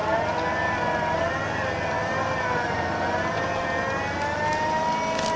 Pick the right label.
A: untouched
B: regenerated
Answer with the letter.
A